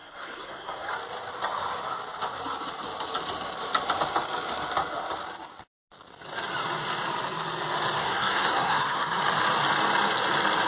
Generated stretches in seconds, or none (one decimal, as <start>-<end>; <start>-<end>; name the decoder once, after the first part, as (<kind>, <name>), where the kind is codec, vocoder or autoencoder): 0.0-0.9 (codec, SNAC); 8.0-9.2

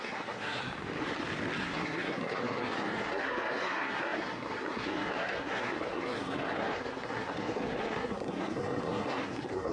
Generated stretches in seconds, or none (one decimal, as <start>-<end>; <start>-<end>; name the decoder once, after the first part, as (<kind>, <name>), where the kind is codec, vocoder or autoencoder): 0.0-0.6 (codec, SNAC); 1.6-9.7

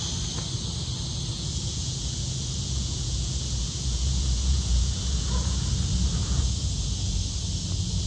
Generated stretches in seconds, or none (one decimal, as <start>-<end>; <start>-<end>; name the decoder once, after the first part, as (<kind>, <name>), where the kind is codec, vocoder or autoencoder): 1.3-5.7 (vocoder, Vocos); 6.2-7.1

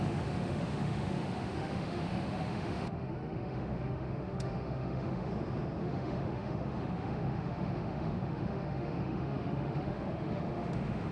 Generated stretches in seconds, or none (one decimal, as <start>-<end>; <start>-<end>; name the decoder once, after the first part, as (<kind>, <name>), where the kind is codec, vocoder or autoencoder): 0.0-5.3 (autoencoder, DAC-VAE); 5.8-11.1

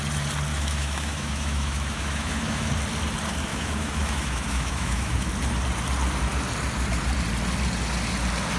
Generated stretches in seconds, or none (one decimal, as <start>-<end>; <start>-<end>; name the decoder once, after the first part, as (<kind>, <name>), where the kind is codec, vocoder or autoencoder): 0.5-2.7 (autoencoder, DAC-VAE); 3.5-5.3

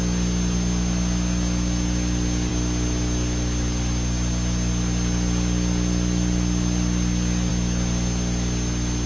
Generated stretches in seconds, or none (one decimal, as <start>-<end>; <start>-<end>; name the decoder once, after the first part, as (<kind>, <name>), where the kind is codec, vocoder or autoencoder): none

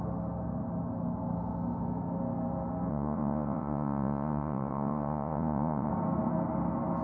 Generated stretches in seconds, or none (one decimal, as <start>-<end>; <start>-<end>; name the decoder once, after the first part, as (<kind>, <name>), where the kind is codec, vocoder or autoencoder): 2.9-5.9 (vocoder, Vocos)

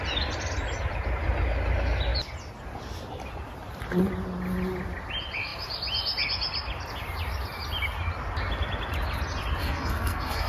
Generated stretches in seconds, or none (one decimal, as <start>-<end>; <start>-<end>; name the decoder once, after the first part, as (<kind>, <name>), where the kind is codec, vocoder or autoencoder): 9.6-10.5 (codec, SNAC)